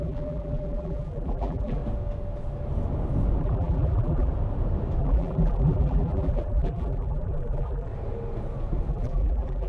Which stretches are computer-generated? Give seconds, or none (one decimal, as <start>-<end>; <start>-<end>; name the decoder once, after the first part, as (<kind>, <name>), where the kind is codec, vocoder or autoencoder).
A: 0.0-1.8 (vocoder, BigVGAN v2); 3.4-4.3; 5.0-7.9; 8.9-9.7